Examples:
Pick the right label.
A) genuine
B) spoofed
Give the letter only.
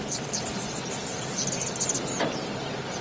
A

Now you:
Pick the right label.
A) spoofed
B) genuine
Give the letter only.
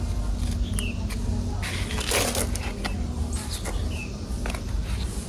B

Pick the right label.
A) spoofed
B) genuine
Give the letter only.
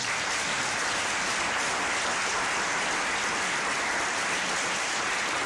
B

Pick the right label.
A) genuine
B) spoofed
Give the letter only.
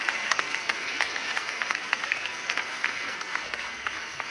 B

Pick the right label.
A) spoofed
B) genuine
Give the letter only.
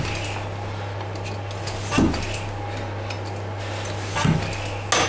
B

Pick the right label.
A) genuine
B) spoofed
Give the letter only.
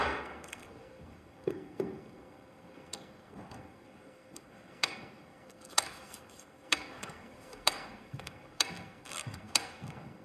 B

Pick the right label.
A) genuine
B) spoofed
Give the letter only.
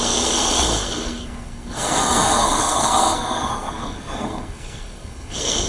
B